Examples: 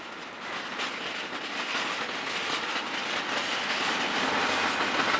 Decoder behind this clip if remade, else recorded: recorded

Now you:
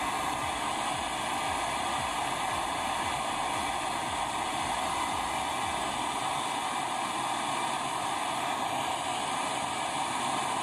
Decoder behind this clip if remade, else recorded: recorded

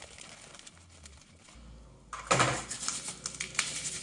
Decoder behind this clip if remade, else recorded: recorded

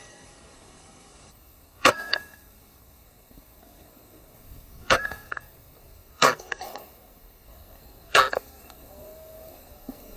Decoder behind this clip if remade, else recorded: remade, codec, SNAC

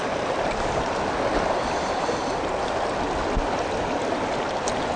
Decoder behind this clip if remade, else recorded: recorded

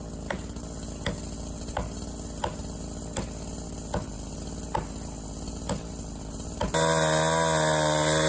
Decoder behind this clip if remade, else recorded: recorded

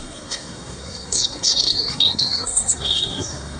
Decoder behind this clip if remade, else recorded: remade, codec, SNAC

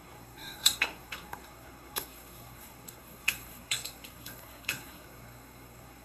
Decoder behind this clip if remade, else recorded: remade, codec, SNAC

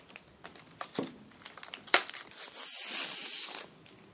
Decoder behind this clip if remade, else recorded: recorded